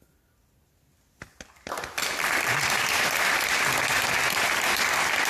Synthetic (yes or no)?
no